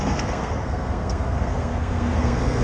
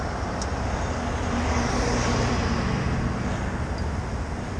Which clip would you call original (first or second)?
second